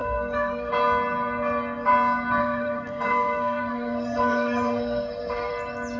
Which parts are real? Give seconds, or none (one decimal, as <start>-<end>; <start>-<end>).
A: 0.7-2.4; 5.5-6.0